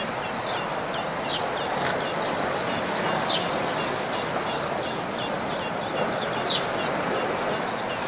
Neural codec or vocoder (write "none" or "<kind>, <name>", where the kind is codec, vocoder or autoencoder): none